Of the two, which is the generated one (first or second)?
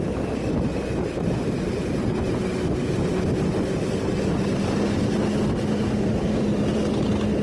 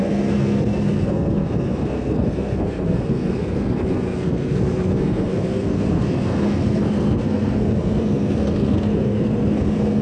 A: second